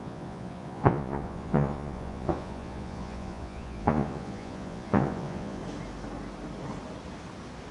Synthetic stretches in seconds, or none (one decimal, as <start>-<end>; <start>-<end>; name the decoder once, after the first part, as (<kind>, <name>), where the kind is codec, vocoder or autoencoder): 0.0-5.6 (vocoder, Vocos)